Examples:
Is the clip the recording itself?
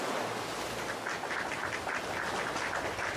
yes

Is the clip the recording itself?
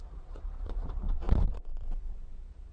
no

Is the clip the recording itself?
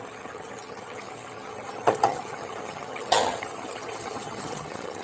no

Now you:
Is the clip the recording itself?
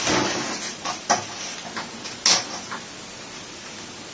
yes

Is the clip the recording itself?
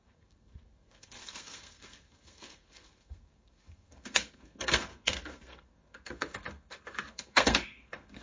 no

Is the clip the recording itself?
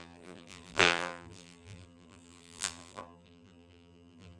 no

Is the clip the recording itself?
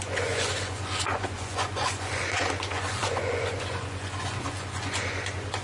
no